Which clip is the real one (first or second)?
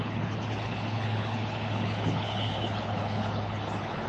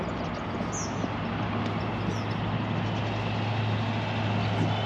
second